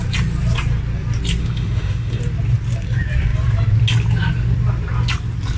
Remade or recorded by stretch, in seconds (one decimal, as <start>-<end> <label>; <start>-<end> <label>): 0.0-1.4 recorded; 1.4-2.2 remade; 2.2-5.6 recorded